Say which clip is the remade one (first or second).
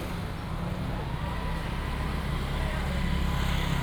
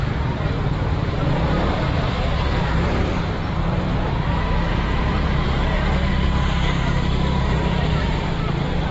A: second